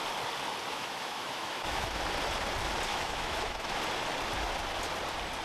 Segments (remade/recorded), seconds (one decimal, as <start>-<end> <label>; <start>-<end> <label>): 0.0-0.7 recorded; 0.7-2.0 remade; 2.0-2.9 recorded; 2.9-3.8 remade; 3.8-5.4 recorded

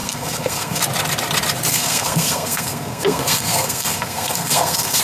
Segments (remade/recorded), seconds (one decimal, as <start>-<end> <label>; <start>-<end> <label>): 0.0-0.8 remade; 0.8-1.7 recorded; 1.7-5.0 remade